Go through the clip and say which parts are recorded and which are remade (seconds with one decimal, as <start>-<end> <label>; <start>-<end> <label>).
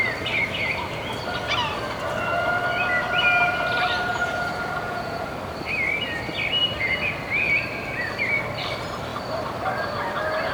0.0-4.1 recorded; 4.1-5.3 remade; 5.3-10.5 recorded